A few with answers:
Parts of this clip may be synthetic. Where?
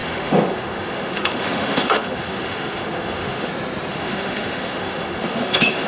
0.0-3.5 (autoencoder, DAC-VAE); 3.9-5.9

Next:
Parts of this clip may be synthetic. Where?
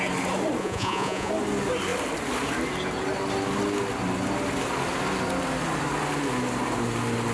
0.6-1.3 (vocoder, Vocos)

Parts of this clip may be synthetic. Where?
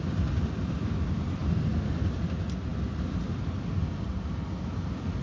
none